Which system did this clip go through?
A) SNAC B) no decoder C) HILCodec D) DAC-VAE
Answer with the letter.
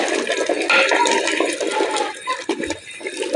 B